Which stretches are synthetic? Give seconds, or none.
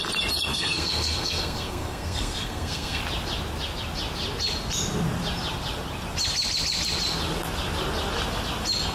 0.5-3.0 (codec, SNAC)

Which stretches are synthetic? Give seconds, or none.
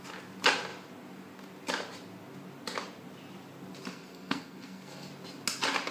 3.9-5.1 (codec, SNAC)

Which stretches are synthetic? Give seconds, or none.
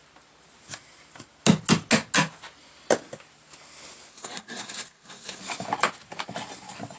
4.1-5.4 (codec, SNAC)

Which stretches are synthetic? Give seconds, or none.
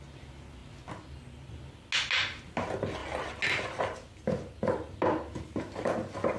none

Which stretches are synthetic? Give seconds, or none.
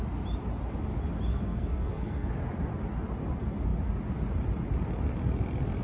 1.3-2.3 (codec, SNAC)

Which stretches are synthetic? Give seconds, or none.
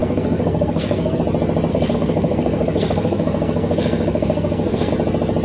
0.0-1.2 (codec, SNAC); 1.7-4.9